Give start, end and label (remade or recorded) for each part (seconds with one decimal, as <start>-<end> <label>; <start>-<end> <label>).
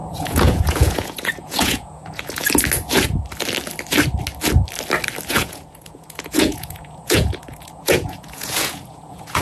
0.0-2.4 remade; 2.4-5.3 recorded; 5.3-9.4 remade